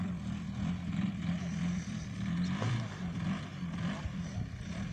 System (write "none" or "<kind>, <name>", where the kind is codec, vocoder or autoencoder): vocoder, BigVGAN v2